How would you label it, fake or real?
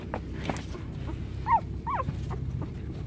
real